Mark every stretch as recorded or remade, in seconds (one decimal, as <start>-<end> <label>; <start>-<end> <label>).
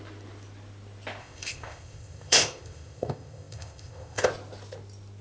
0.0-1.2 recorded; 1.2-4.3 remade; 4.3-5.2 recorded